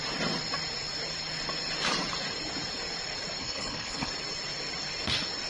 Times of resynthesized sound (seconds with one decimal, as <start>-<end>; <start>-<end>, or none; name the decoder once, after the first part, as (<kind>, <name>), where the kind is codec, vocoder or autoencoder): 3.4-4.1 (codec, HILCodec)